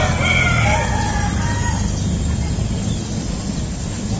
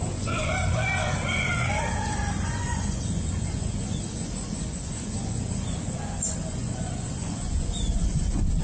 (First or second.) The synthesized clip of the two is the second